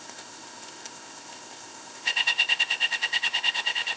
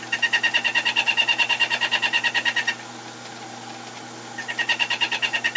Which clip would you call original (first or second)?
second